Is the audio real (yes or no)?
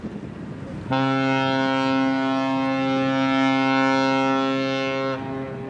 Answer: yes